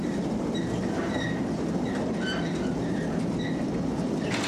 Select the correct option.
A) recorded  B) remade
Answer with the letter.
B